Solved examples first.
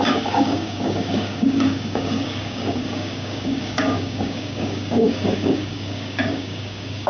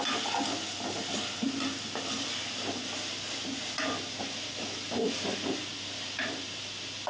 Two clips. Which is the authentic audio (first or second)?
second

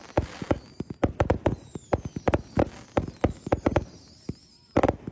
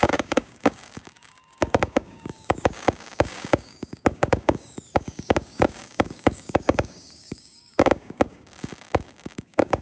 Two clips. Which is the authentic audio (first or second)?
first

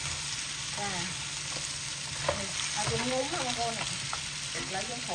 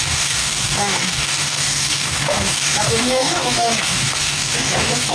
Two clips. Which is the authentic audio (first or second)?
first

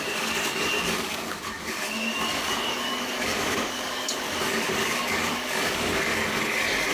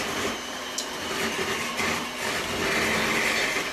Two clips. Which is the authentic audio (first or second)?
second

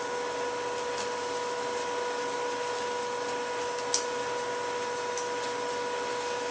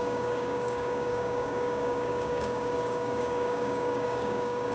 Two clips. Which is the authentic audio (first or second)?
first